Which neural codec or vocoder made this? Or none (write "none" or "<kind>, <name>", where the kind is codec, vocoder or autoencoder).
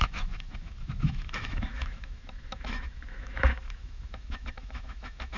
autoencoder, DAC-VAE